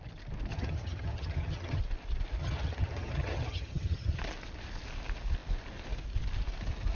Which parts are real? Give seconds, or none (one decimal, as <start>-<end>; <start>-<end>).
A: 0.0-0.5; 1.8-2.4; 4.2-6.9